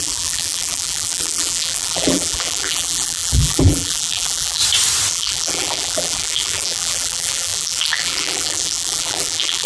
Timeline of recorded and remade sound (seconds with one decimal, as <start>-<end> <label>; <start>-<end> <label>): 0.0-4.6 remade; 4.6-5.1 recorded; 5.1-9.7 remade